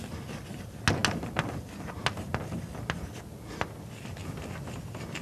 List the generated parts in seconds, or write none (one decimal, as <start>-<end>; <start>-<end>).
none